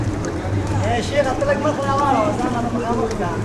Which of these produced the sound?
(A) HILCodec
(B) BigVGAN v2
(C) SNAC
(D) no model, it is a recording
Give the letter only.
B